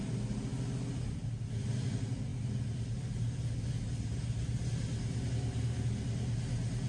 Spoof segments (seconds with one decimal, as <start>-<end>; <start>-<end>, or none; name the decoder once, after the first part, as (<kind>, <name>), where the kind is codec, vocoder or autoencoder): none